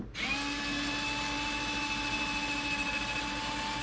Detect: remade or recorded recorded